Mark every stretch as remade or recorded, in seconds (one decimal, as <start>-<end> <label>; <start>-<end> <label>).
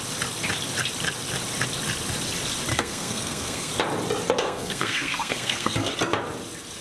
0.0-2.7 recorded; 2.7-3.7 remade; 3.7-4.4 recorded; 4.4-5.9 remade; 5.9-6.8 recorded